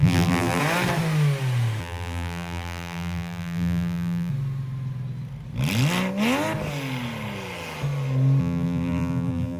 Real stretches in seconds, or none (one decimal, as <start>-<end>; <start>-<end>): 0.6-1.8; 4.3-8.4